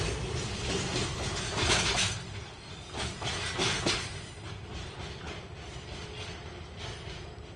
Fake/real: real